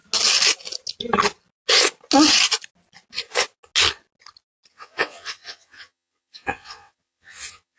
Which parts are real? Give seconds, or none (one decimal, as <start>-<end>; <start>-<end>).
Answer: 0.0-4.7